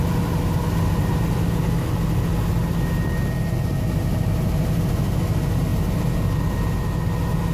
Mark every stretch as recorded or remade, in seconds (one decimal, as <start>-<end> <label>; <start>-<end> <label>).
0.0-7.5 recorded